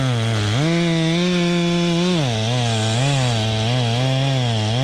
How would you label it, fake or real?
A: real